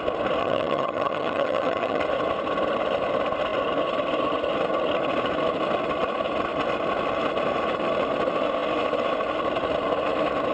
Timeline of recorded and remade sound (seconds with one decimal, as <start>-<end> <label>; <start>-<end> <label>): 0.0-0.4 recorded; 0.4-2.0 remade; 2.0-10.5 recorded

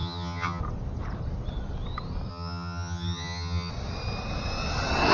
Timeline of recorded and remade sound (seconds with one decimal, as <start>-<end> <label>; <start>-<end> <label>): 0.0-0.6 remade; 0.6-2.3 recorded; 2.3-3.7 remade; 3.7-5.1 recorded

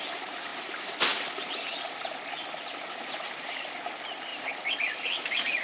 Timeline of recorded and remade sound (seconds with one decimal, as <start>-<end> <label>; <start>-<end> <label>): 0.0-5.6 recorded

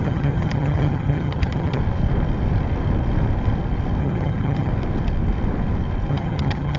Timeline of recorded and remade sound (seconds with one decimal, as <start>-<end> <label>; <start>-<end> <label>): 0.0-1.8 remade; 1.8-4.0 recorded; 4.0-4.7 remade; 4.7-6.1 recorded; 6.1-6.8 remade

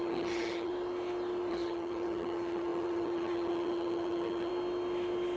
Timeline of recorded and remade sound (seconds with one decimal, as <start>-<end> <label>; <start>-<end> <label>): 0.0-0.7 remade; 0.7-1.5 recorded; 1.5-4.5 remade; 4.5-5.4 recorded

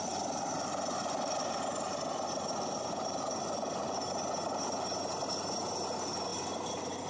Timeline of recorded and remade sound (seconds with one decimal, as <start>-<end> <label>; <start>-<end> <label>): 0.0-7.1 recorded